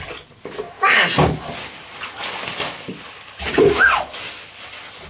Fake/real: real